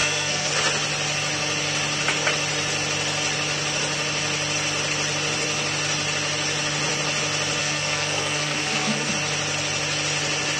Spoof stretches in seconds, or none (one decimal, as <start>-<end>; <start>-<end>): 0.0-0.5; 7.6-9.1